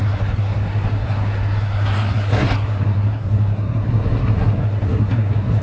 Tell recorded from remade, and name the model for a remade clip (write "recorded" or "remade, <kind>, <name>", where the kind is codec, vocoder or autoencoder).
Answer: remade, codec, SNAC